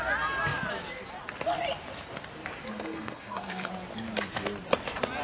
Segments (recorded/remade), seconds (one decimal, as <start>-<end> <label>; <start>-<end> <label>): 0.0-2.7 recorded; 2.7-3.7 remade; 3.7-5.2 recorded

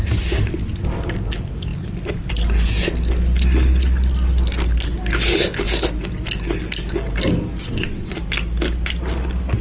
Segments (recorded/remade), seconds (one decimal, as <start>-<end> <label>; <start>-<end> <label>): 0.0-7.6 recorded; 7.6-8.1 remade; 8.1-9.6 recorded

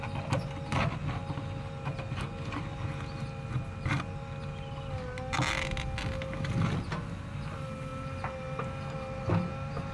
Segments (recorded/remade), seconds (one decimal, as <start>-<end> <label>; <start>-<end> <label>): 0.0-9.9 recorded

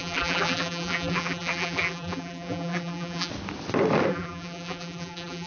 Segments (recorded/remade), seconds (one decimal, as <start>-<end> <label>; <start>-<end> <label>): 0.0-3.3 remade; 3.3-4.1 recorded; 4.1-5.5 remade